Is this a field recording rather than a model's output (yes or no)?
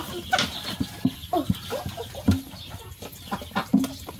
yes